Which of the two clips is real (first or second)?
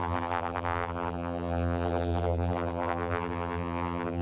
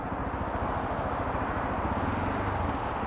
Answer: second